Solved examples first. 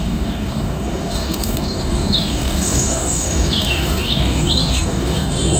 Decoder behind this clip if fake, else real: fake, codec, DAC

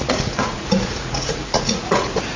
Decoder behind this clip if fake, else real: fake, vocoder, Vocos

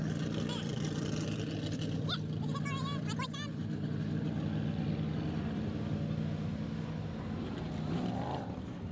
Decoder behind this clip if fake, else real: real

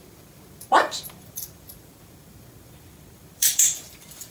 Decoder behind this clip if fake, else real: fake, vocoder, BigVGAN v2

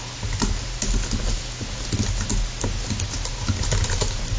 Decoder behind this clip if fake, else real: real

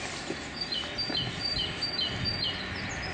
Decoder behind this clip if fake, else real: real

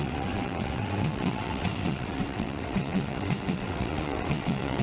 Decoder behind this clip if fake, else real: fake, vocoder, WaveNeXt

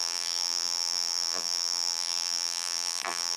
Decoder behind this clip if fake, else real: fake, vocoder, BigVGAN v2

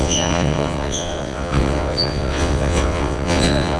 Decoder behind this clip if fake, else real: fake, vocoder, WaveNeXt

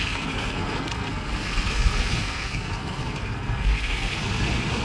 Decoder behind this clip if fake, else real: fake, codec, SNAC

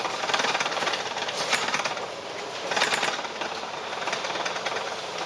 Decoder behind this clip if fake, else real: real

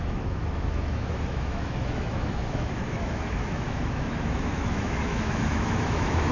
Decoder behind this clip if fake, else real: fake, autoencoder, DAC-VAE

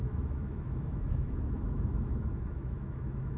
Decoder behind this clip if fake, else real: fake, autoencoder, DAC-VAE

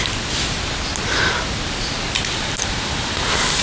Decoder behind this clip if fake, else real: real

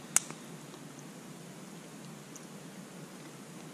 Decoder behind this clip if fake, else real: real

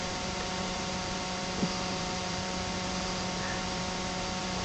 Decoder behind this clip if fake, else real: fake, vocoder, BigVGAN v2